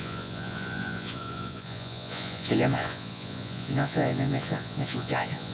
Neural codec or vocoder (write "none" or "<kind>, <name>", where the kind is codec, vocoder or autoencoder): vocoder, Vocos